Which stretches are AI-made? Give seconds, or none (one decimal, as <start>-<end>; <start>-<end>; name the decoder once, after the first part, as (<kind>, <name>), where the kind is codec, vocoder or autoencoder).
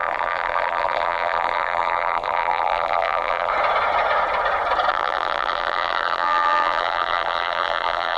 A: 0.0-3.5 (vocoder, BigVGAN v2); 4.9-8.2